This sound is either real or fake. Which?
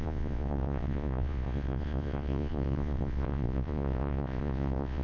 fake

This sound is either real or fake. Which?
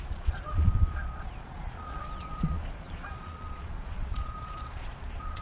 fake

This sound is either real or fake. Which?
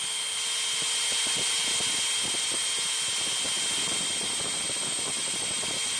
real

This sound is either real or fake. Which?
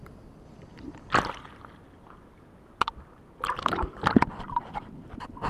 real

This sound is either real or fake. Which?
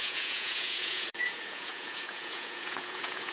fake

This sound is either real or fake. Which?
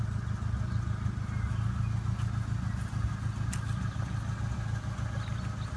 real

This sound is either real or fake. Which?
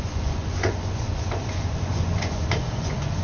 fake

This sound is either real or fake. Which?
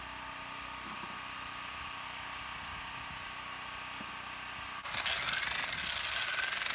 real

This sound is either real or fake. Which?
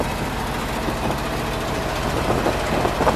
real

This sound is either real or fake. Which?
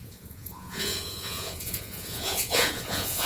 fake